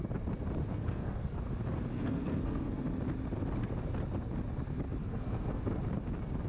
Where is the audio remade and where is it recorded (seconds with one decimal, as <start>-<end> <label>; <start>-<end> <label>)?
0.0-0.6 recorded; 0.6-1.4 remade; 1.4-1.9 recorded; 1.9-2.8 remade; 2.8-5.0 recorded; 5.0-5.8 remade; 5.8-6.5 recorded